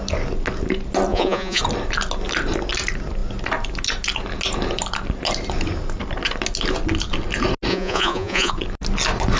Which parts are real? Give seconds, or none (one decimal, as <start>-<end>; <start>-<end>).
0.0-1.1; 1.6-7.7; 8.5-9.4

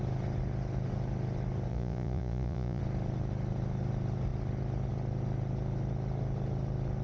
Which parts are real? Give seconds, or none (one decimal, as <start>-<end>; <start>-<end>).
0.0-1.7; 2.8-7.0